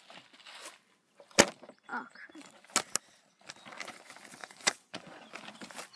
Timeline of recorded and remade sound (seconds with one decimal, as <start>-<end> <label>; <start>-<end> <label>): 0.0-4.4 recorded; 4.4-5.3 remade; 5.3-6.0 recorded